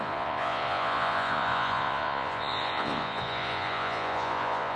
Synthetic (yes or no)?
yes